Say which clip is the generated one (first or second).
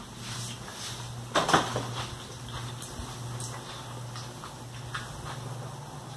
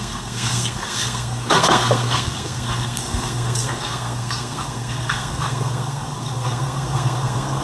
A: second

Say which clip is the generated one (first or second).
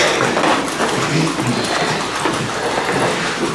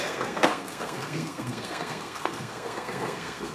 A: second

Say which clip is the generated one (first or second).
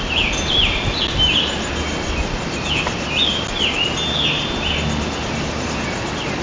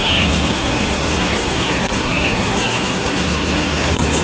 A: second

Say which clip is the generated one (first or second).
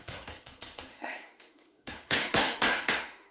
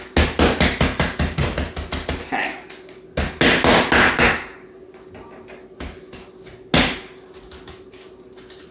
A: first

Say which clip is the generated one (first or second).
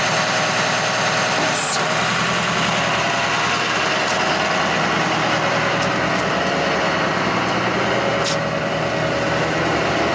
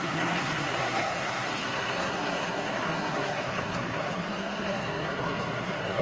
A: second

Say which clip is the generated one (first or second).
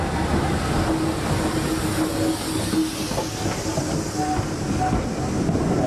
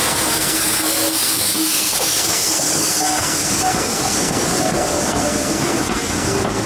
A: second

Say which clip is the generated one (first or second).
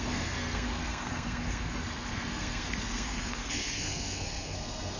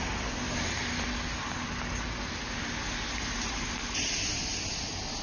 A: first